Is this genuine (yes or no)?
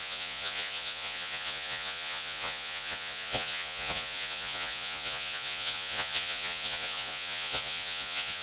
no